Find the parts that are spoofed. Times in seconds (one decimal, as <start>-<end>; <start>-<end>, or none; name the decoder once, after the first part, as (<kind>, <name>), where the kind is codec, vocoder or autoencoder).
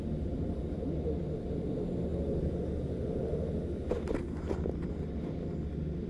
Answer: none